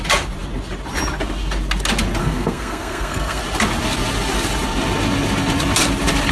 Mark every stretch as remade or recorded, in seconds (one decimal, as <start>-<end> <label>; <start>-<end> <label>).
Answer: 0.0-2.2 recorded; 2.2-3.4 remade; 3.4-6.3 recorded